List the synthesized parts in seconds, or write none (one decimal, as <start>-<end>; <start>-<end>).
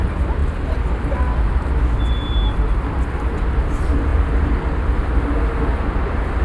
none